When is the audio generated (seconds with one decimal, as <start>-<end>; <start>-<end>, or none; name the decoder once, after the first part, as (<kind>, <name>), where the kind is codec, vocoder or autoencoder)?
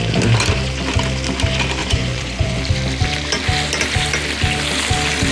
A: 1.8-2.6 (vocoder, Vocos)